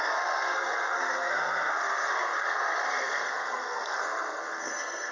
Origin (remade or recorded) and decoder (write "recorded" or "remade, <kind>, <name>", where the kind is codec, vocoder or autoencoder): remade, codec, SNAC